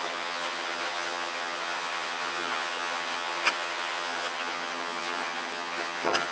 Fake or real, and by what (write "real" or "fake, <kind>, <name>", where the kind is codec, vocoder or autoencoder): fake, vocoder, HiFi-GAN